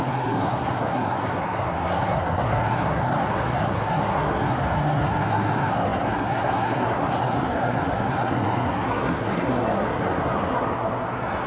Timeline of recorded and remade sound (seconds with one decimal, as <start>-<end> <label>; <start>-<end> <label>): 0.0-11.5 remade